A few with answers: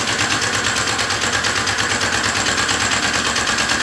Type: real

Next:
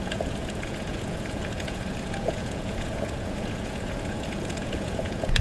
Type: fake